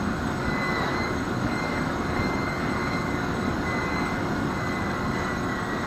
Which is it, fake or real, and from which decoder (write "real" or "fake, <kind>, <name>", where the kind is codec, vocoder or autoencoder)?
fake, codec, DAC